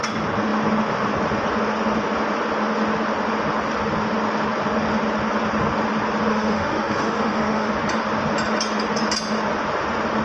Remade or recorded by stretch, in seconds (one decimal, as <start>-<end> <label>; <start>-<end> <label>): 0.0-6.3 recorded; 6.3-7.7 remade; 7.7-10.2 recorded